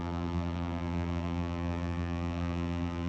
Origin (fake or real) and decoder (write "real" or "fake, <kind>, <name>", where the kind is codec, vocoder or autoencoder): fake, vocoder, BigVGAN v2